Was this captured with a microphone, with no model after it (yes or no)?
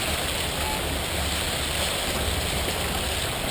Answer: yes